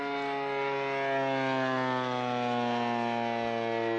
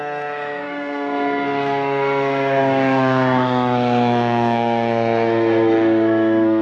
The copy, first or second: second